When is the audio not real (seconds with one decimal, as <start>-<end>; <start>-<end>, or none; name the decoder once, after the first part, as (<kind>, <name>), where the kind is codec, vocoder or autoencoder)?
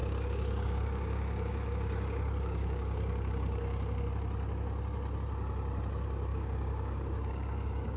0.0-4.0 (codec, DAC); 6.3-8.0